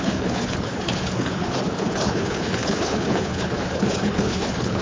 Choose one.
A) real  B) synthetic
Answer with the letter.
B